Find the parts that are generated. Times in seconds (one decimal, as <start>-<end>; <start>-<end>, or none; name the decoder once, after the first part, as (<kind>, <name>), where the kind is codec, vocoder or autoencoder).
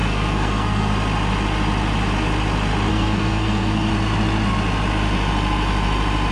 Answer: 0.0-0.9 (codec, SNAC); 2.9-3.9